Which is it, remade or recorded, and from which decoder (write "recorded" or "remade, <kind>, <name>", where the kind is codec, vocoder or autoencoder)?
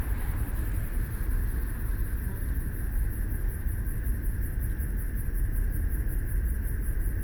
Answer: recorded